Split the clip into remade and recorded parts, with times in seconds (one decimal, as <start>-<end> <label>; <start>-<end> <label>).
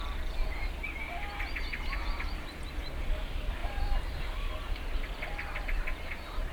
0.0-3.6 recorded; 3.6-4.8 remade; 4.8-6.5 recorded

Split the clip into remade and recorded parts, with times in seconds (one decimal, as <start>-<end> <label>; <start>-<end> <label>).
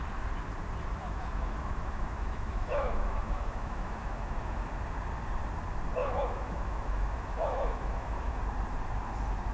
0.0-1.0 recorded; 1.0-4.7 remade; 4.7-6.0 recorded; 6.0-8.4 remade; 8.4-9.5 recorded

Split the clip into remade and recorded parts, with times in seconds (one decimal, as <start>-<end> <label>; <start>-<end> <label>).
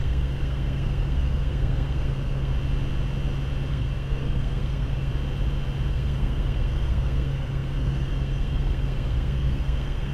0.0-2.5 remade; 2.5-3.7 recorded; 3.7-5.1 remade; 5.1-5.9 recorded; 5.9-10.1 remade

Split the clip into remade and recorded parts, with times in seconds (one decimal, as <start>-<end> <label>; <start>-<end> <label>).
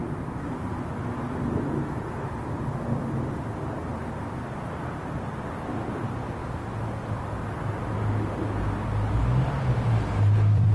0.0-6.4 recorded; 6.4-10.7 remade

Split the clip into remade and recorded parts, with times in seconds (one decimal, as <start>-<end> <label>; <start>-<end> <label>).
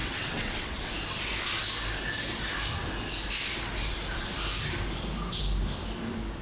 0.0-0.9 remade; 0.9-6.4 recorded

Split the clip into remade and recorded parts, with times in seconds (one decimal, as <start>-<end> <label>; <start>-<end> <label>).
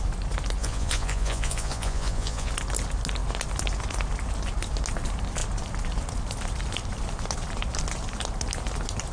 0.0-0.6 recorded; 0.6-2.5 remade; 2.5-9.1 recorded